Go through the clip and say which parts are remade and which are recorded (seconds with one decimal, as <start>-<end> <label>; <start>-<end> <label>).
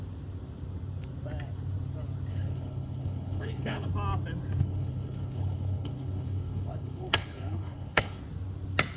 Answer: 0.0-2.3 recorded; 2.3-3.9 remade; 3.9-4.6 recorded; 4.6-8.2 remade; 8.2-9.0 recorded